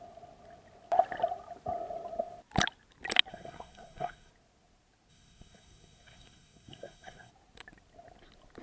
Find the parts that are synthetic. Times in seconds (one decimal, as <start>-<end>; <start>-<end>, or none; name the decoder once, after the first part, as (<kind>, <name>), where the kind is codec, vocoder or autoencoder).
3.3-4.3 (codec, SNAC); 5.1-7.3